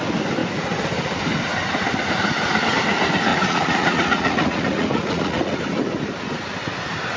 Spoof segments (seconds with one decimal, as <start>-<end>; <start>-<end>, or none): 3.3-5.6